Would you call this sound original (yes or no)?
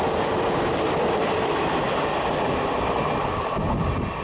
yes